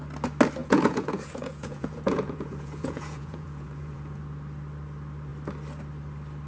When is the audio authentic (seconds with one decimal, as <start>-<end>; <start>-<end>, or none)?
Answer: 0.0-0.6; 4.2-6.5

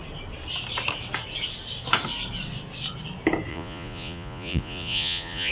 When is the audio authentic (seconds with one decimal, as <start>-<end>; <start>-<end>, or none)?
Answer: 0.0-3.5

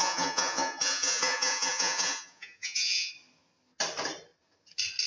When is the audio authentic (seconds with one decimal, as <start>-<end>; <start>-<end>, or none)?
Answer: 3.1-5.1

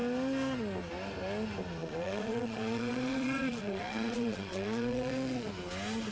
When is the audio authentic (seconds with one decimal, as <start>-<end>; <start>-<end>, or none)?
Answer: 0.0-1.8; 5.5-6.1

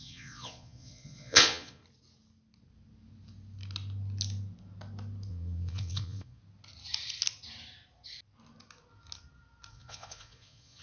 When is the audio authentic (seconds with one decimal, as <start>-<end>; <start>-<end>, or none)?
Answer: 1.8-5.3; 6.4-9.7

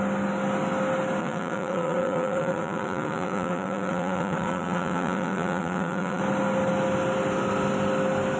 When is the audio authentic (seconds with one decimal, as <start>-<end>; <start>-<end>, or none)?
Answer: 0.0-1.2; 6.2-8.4

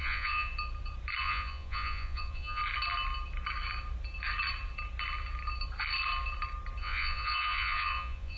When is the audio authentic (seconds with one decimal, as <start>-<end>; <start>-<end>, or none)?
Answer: 0.5-1.2; 2.6-6.8